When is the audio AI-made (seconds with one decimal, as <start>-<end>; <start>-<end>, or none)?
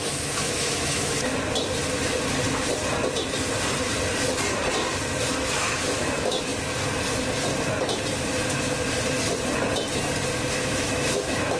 0.0-1.3; 5.3-6.5; 10.6-11.6